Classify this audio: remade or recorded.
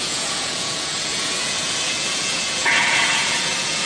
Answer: remade